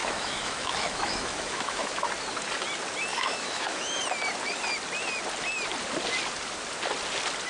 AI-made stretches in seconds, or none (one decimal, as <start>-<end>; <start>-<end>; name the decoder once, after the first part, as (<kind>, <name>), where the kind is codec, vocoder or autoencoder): 0.0-2.1 (autoencoder, DAC-VAE); 3.1-4.0

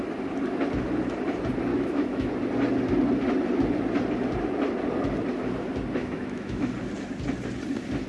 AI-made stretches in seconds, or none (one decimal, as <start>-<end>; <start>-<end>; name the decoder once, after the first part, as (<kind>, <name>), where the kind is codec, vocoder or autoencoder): 1.7-2.3 (autoencoder, DAC-VAE); 6.0-6.7

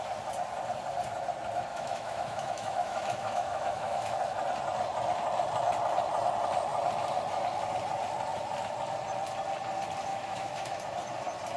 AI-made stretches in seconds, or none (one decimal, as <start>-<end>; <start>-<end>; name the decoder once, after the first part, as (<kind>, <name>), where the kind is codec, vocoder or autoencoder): 1.7-4.2 (autoencoder, DAC-VAE); 10.1-10.8

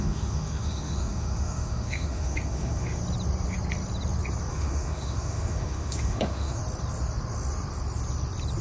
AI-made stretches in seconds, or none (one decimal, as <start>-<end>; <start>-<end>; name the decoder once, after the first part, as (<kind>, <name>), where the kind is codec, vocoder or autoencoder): 0.0-3.0 (autoencoder, DAC-VAE); 4.5-6.6